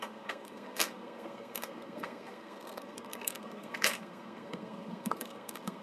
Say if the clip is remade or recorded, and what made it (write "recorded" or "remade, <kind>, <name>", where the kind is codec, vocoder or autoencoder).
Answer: remade, codec, SNAC